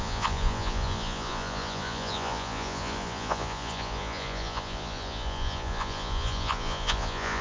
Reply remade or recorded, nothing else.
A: remade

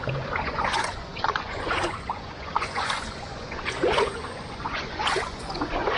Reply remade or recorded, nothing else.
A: remade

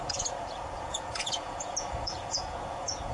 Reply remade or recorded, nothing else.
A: remade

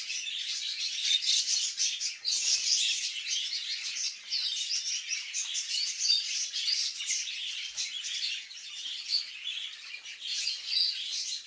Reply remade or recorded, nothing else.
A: remade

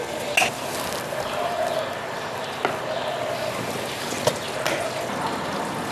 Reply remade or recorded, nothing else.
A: recorded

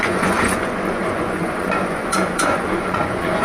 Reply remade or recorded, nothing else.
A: remade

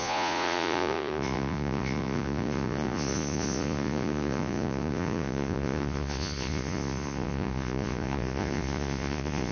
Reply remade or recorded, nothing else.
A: remade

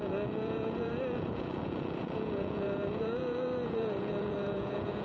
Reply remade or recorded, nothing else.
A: remade